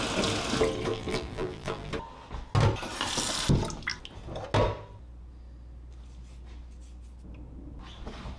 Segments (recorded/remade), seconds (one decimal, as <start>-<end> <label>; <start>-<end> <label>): 0.0-0.9 recorded; 0.9-1.9 remade; 1.9-8.4 recorded